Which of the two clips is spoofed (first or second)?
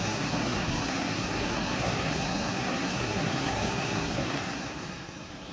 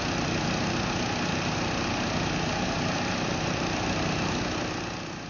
first